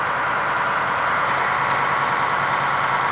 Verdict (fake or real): real